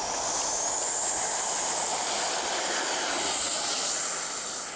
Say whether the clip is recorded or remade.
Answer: recorded